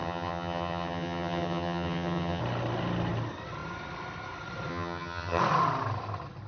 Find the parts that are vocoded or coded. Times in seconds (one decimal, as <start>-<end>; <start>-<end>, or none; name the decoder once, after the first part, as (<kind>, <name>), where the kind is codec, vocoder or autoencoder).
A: 0.0-2.4 (vocoder, HiFi-GAN); 4.7-5.4